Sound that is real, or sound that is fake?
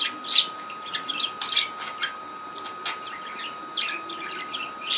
real